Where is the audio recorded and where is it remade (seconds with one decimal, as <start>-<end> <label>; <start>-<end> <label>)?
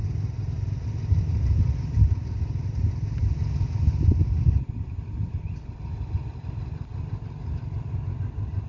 0.0-8.7 recorded